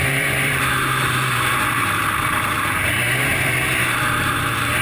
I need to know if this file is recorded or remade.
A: remade